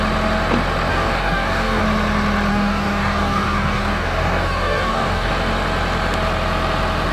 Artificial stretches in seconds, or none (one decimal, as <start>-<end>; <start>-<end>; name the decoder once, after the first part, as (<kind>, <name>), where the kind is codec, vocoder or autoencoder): 0.9-1.8 (codec, DAC); 2.5-5.3